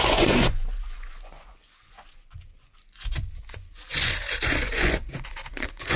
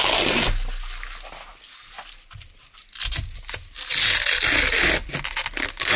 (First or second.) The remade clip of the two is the first